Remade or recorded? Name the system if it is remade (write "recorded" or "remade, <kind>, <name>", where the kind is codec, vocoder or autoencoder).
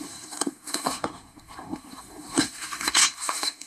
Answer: remade, codec, SNAC